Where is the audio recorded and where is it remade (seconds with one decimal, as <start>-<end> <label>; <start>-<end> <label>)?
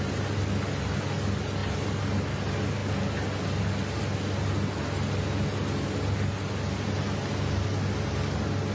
0.0-8.7 recorded